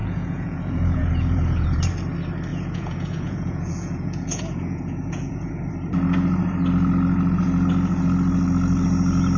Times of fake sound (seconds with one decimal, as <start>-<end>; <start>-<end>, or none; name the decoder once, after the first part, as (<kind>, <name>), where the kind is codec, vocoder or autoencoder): 0.0-1.8 (vocoder, Vocos); 2.5-5.5